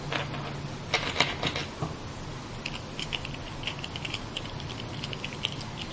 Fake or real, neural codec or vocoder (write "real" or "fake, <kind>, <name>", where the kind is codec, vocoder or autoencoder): real